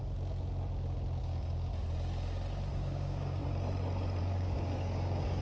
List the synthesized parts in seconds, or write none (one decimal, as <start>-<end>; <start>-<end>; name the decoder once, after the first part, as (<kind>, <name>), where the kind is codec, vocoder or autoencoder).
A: 1.2-1.7 (codec, DAC); 2.7-3.4; 4.2-5.4